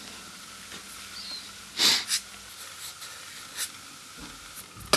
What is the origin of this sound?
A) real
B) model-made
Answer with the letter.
A